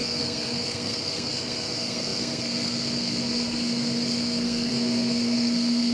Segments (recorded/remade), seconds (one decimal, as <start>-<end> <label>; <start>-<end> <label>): 0.0-5.9 remade